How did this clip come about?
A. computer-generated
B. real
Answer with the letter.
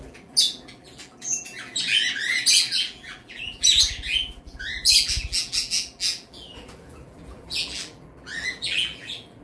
A